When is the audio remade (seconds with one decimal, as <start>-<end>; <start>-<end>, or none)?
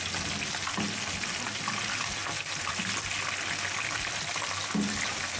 none